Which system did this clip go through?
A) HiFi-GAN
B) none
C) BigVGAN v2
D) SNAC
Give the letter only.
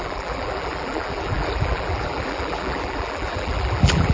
C